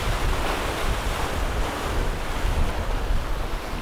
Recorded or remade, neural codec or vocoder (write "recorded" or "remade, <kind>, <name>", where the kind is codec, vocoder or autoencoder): recorded